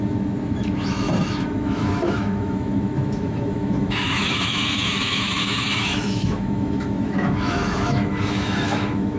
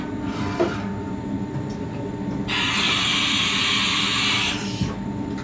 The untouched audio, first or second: second